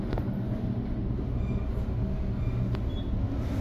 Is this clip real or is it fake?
real